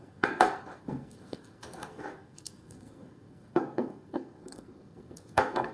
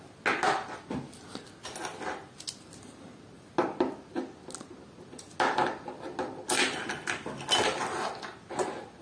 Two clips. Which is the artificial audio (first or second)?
first